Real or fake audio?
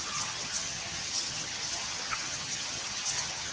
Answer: fake